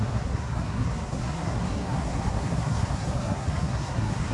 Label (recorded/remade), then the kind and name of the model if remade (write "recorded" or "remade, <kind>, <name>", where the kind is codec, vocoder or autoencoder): remade, codec, SNAC